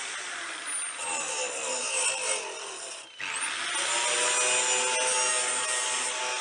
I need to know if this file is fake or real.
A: real